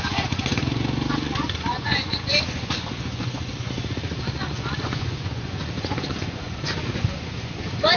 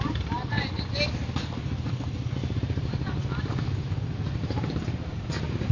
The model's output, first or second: first